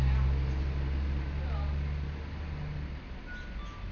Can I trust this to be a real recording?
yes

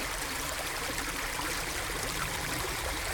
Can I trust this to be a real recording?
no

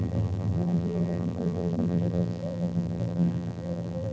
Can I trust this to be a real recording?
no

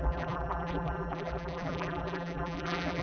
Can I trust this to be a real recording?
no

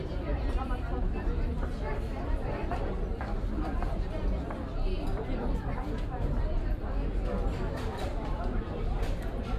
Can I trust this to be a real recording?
no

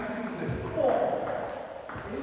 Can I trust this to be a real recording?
yes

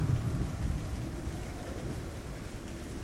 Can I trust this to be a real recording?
yes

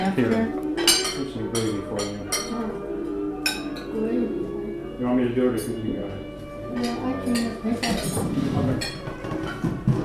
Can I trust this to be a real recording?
yes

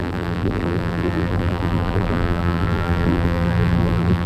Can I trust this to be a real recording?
no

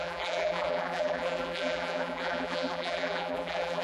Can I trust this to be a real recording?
no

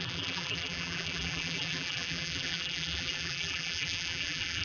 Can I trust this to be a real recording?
no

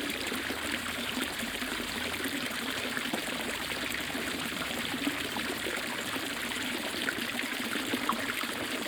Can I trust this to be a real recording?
no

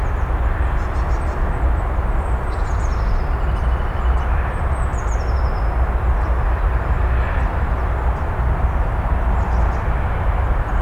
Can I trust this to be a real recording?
yes